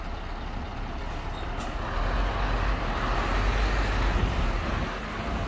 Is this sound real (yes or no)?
yes